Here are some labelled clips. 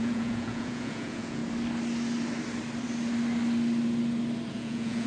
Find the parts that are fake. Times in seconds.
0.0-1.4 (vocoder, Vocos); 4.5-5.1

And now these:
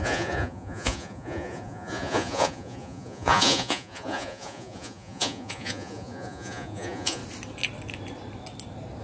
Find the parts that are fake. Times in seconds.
0.0-7.2 (vocoder, Vocos)

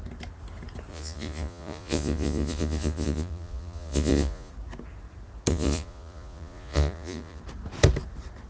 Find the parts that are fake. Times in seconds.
0.9-4.5 (vocoder, Vocos); 5.5-7.4